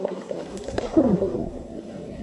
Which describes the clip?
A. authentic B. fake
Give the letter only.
B